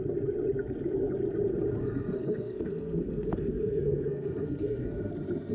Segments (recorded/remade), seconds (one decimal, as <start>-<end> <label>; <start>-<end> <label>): 0.0-1.8 recorded; 1.8-5.1 remade; 5.1-5.5 recorded